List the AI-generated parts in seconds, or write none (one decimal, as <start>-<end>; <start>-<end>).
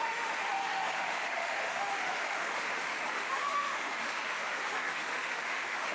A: 0.0-5.9